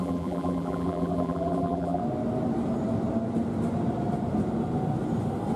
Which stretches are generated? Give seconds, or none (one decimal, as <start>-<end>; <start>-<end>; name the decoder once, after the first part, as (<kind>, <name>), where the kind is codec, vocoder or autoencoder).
0.0-2.0 (vocoder, BigVGAN v2)